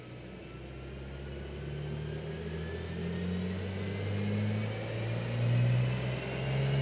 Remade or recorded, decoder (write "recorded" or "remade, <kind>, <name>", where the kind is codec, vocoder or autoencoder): recorded